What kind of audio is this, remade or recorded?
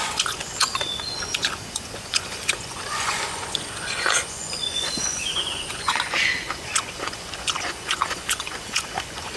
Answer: remade